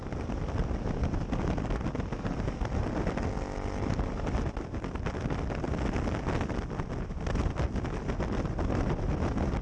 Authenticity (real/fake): real